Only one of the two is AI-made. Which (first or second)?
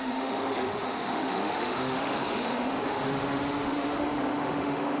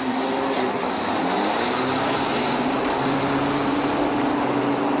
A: first